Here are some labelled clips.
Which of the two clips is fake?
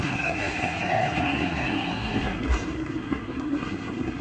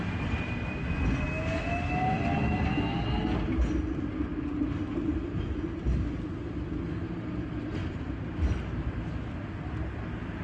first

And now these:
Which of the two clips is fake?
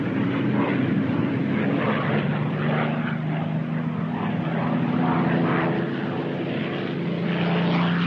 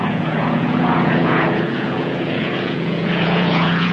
second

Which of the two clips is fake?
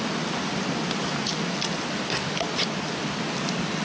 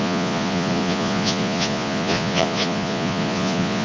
second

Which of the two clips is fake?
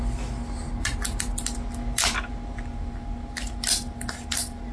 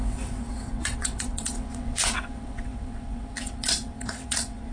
second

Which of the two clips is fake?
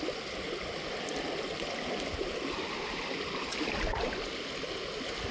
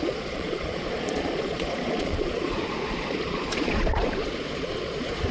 second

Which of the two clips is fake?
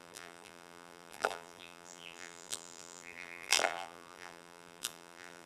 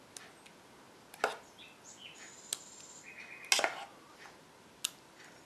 first